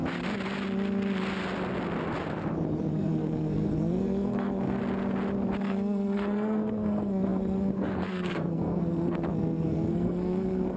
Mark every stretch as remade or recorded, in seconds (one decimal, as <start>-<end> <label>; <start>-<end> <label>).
0.0-2.9 recorded; 2.9-4.8 remade; 4.8-5.6 recorded; 5.6-10.8 remade